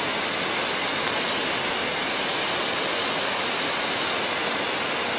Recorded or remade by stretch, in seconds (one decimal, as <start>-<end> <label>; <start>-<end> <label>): 0.0-5.2 recorded